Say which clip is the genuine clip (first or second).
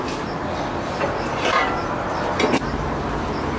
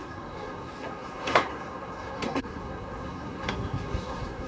first